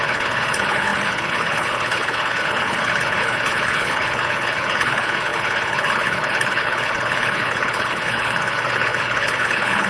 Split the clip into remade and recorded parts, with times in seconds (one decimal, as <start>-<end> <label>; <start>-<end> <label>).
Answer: 0.0-9.9 remade